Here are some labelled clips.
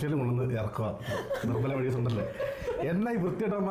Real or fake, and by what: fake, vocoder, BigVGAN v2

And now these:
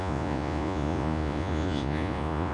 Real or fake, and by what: fake, vocoder, Vocos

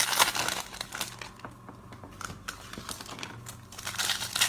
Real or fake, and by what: real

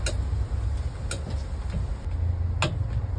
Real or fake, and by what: real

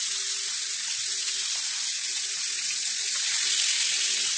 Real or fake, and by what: real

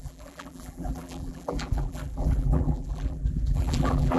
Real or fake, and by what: fake, vocoder, BigVGAN v2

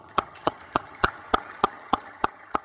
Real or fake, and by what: fake, vocoder, HiFi-GAN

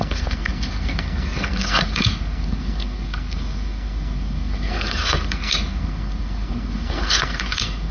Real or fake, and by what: fake, codec, SNAC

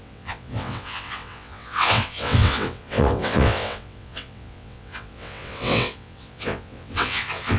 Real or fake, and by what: fake, vocoder, WaveNeXt